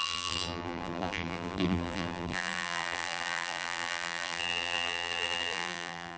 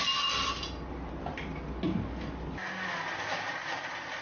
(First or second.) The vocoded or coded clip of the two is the first